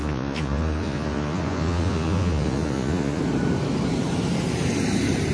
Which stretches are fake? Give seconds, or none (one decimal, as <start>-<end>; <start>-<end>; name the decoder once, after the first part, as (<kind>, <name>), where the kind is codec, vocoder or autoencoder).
0.0-3.2 (vocoder, Vocos)